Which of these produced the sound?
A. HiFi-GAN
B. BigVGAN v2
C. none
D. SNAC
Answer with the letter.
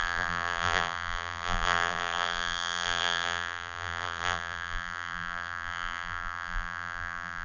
B